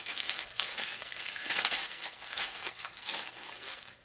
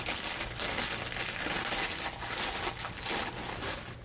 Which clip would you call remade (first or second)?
first